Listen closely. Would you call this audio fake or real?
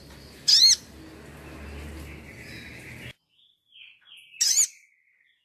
real